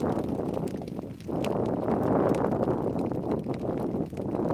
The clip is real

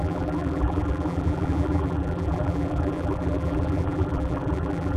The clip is fake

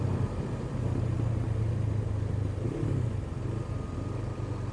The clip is real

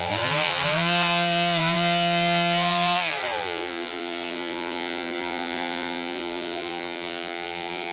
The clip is fake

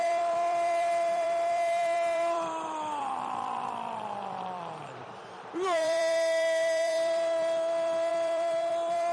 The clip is fake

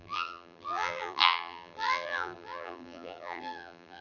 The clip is fake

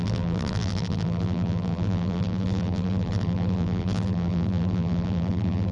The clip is fake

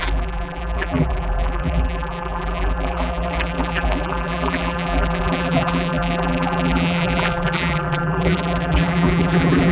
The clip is fake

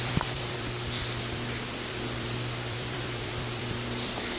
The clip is fake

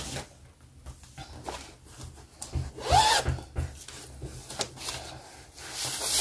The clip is real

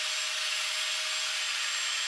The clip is real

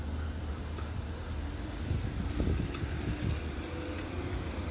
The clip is real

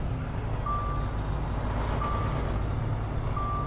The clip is real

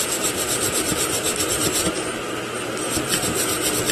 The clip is fake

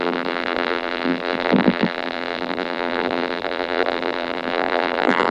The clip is fake